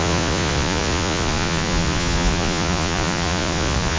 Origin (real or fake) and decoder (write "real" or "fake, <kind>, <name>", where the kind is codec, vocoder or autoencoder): fake, vocoder, Vocos